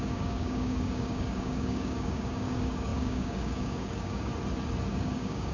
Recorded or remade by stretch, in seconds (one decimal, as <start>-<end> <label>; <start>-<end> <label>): 0.0-4.3 remade; 4.3-4.9 recorded; 4.9-5.5 remade

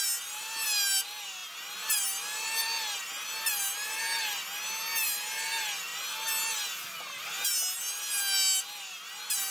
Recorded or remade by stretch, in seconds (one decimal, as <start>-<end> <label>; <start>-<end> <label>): 0.0-9.5 recorded